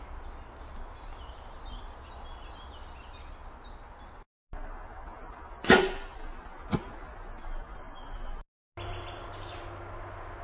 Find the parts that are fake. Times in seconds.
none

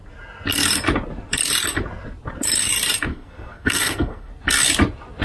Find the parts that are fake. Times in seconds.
3.1-4.3 (codec, SNAC)

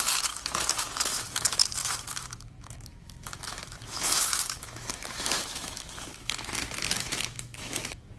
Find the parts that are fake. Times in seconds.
0.0-8.2 (autoencoder, DAC-VAE)

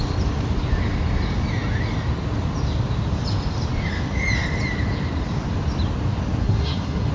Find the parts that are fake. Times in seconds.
6.4-7.1 (codec, SNAC)

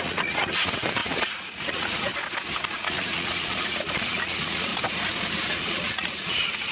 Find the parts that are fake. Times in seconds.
0.0-2.1 (vocoder, Vocos); 2.7-4.7; 5.5-6.7

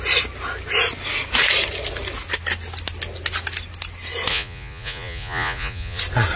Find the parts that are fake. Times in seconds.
4.3-6.0 (vocoder, Vocos)

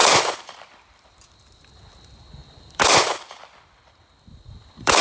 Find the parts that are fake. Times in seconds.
0.0-1.3 (vocoder, BigVGAN v2); 2.4-5.0